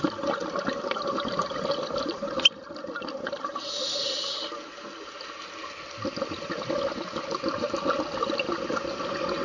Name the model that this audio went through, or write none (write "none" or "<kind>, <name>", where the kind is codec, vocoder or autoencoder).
none